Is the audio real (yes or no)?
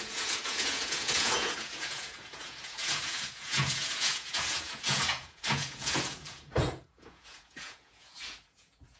no